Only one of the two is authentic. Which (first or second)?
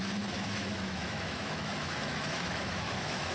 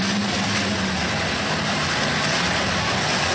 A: second